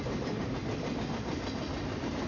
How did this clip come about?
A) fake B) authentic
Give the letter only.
B